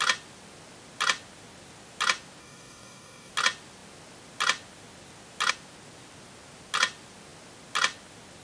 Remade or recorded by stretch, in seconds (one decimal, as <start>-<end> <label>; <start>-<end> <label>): 0.0-2.4 recorded; 2.4-3.3 remade; 3.3-8.4 recorded